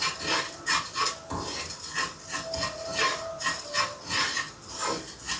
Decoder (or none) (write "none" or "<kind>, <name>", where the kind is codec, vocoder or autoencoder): none